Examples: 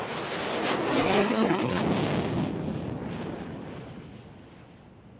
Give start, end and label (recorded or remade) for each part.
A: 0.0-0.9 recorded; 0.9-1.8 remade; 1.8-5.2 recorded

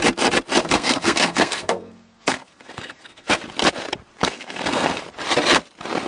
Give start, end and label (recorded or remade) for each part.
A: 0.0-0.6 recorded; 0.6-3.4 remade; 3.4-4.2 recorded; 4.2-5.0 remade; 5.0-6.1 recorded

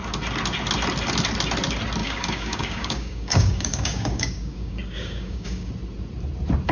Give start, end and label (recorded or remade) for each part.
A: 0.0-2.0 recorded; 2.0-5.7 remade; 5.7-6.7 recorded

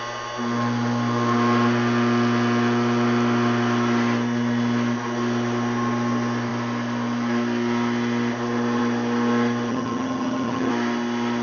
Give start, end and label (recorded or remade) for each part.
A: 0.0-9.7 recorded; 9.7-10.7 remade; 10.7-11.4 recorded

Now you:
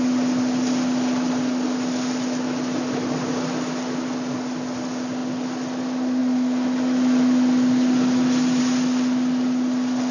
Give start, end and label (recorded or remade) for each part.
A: 0.0-10.1 recorded